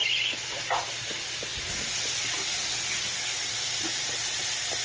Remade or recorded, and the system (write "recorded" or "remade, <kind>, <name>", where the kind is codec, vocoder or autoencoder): recorded